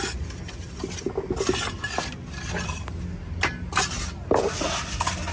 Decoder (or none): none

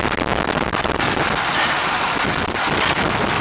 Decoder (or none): none